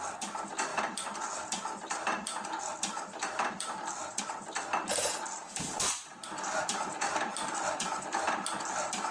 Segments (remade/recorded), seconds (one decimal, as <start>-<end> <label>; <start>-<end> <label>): 0.0-0.7 recorded; 0.7-4.2 remade; 4.2-5.7 recorded; 5.7-8.4 remade; 8.4-9.1 recorded